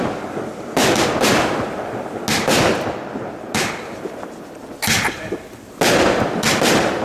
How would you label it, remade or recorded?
recorded